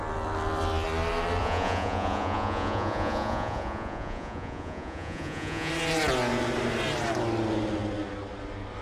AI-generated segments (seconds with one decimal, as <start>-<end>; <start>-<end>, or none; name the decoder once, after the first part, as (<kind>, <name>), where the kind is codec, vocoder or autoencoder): 1.4-5.7 (vocoder, Vocos)